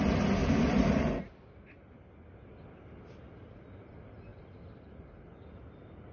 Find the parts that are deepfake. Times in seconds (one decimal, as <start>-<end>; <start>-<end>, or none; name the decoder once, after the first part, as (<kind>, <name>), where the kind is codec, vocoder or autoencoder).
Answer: 0.4-1.2 (vocoder, BigVGAN v2); 4.3-5.2